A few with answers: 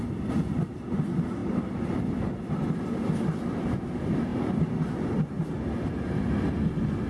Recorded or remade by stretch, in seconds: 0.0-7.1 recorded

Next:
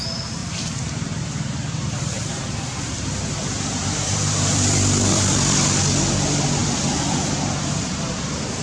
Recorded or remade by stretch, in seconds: 0.0-0.4 recorded; 0.4-5.6 remade; 5.6-6.6 recorded; 6.6-8.6 remade

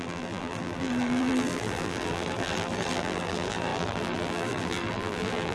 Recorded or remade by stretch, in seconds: 0.0-5.5 remade

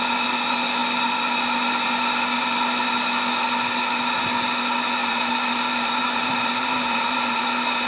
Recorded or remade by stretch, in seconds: 0.0-5.0 recorded; 5.0-7.4 remade; 7.4-7.9 recorded

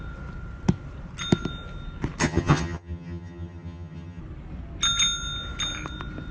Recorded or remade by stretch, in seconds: 0.0-2.2 recorded; 2.2-4.2 remade; 4.2-6.3 recorded

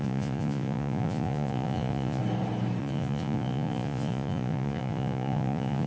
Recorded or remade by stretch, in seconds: 0.0-2.2 remade; 2.2-2.8 recorded; 2.8-5.9 remade

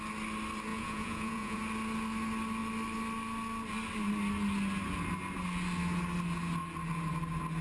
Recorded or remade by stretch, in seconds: 0.0-0.7 recorded; 0.7-1.6 remade; 1.6-7.6 recorded